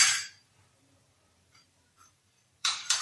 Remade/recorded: remade